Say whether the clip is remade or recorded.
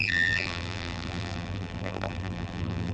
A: remade